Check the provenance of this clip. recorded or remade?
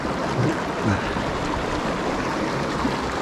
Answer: recorded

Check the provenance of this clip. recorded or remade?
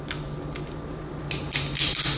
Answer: recorded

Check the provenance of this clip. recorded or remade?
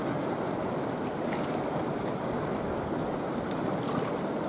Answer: recorded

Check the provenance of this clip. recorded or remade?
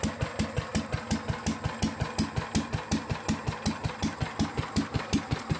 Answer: recorded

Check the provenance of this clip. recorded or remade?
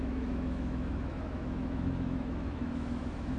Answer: remade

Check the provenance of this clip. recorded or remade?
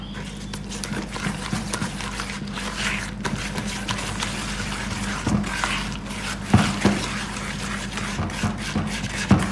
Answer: recorded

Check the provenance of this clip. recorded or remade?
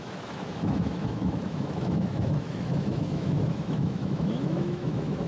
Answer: remade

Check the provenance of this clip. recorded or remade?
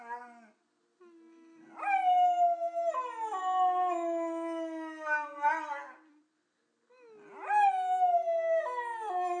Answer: recorded